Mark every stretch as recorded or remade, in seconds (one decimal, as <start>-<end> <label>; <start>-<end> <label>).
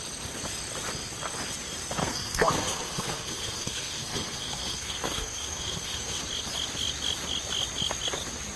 0.0-2.0 recorded; 2.0-6.2 remade; 6.2-8.6 recorded